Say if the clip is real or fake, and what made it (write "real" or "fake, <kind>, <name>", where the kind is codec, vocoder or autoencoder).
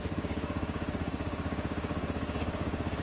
fake, codec, DAC